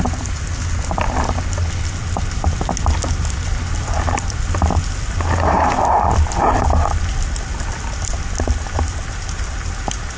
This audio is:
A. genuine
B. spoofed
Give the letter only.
A